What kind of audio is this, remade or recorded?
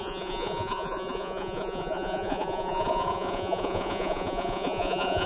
remade